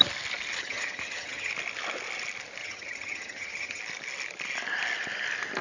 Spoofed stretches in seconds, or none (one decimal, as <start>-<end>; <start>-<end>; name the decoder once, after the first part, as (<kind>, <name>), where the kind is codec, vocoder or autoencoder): 0.6-1.5 (vocoder, HiFi-GAN); 2.6-3.8